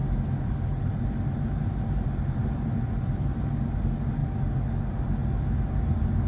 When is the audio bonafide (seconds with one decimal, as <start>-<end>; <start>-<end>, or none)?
4.2-4.9